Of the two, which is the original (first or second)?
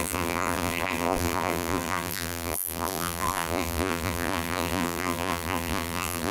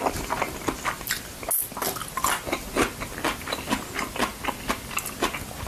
second